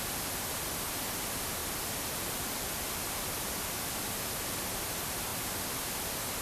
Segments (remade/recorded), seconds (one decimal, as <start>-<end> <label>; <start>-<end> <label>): 0.0-1.6 recorded; 1.6-4.1 remade; 4.1-5.3 recorded; 5.3-5.8 remade; 5.8-6.4 recorded